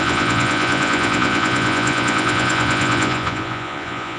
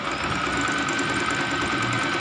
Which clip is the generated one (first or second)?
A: first